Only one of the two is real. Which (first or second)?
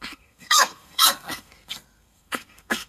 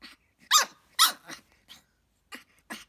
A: second